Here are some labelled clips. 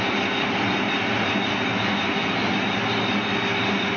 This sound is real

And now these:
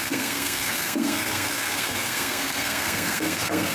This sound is fake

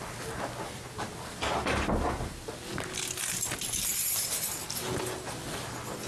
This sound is real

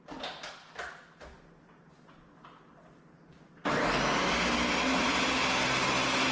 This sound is real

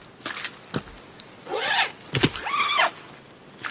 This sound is real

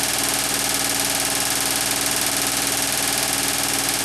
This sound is real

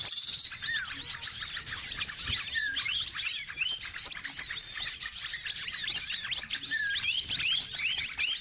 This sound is real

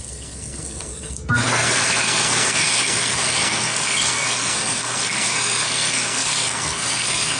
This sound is fake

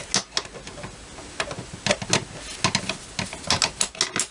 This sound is real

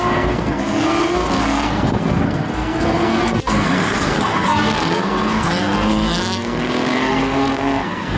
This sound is fake